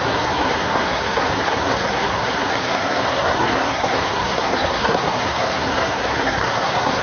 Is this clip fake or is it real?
fake